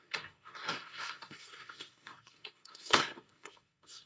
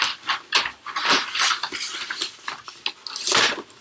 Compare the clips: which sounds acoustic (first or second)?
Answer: second